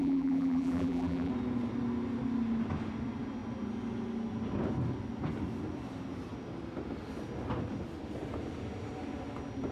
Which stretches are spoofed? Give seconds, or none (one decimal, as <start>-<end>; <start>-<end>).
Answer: 0.0-1.3